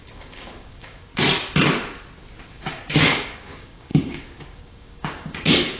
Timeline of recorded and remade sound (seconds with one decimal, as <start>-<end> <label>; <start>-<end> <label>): 0.0-1.1 remade; 1.1-2.4 recorded; 2.4-5.8 remade